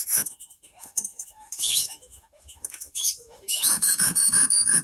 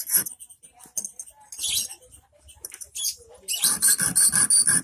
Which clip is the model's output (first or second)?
first